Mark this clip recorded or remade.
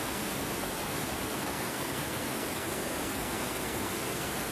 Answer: remade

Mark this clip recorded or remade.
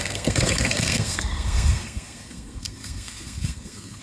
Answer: remade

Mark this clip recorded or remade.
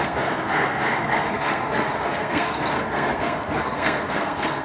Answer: remade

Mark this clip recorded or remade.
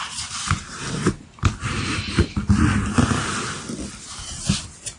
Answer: recorded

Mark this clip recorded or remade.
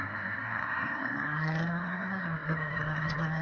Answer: remade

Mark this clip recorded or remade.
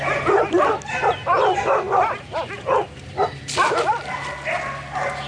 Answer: recorded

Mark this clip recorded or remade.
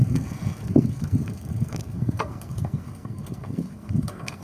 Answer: remade